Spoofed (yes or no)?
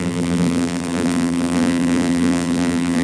yes